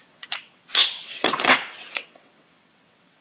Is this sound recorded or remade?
remade